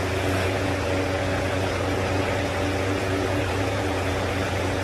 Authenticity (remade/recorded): remade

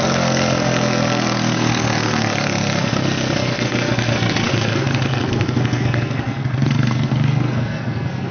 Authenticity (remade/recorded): remade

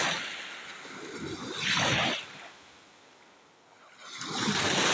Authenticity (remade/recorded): recorded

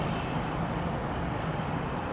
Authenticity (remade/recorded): recorded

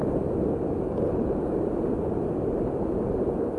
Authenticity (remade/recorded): recorded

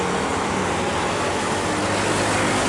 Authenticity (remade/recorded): recorded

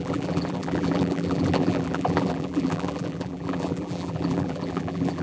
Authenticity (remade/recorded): remade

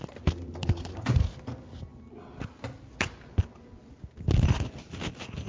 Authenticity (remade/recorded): recorded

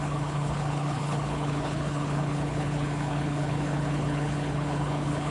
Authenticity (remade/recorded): remade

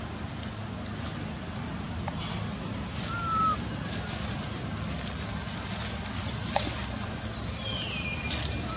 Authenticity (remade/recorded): recorded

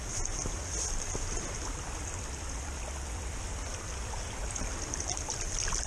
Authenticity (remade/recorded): recorded